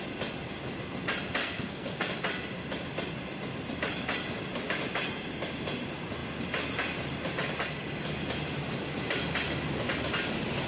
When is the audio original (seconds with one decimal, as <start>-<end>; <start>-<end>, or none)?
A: 0.0-1.4; 2.1-10.7